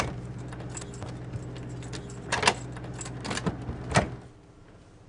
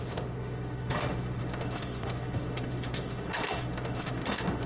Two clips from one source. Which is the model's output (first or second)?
second